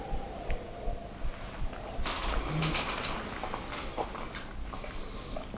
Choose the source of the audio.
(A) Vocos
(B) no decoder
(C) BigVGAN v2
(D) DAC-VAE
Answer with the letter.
B